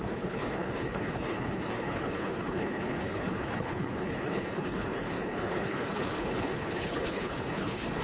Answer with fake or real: fake